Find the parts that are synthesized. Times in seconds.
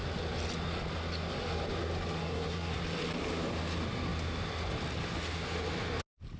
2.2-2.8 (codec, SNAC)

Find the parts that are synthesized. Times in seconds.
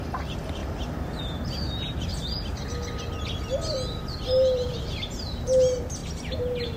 0.0-0.6 (vocoder, BigVGAN v2); 1.2-2.1; 4.3-6.0